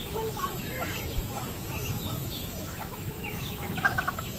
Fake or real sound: fake